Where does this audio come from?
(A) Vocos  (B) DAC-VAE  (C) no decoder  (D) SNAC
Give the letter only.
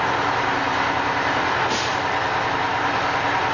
C